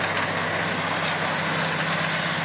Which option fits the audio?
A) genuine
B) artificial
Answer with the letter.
A